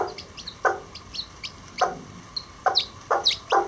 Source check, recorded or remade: recorded